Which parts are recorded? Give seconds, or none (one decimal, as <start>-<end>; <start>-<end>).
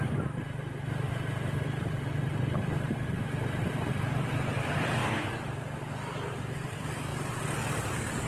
5.0-5.9